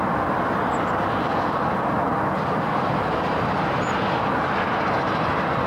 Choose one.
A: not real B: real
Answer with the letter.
B